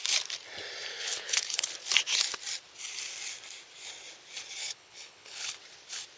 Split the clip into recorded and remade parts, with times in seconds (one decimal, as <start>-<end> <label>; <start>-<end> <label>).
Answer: 0.0-0.9 recorded; 0.9-1.7 remade; 1.7-4.6 recorded; 4.6-5.6 remade; 5.6-6.2 recorded